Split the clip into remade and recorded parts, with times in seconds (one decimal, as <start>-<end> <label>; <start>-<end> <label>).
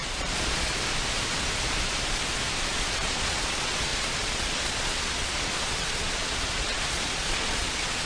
0.0-0.7 remade; 0.7-2.7 recorded; 2.7-8.1 remade